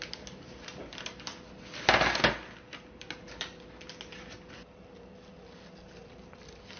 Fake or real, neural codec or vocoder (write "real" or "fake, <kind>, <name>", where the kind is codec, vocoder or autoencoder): real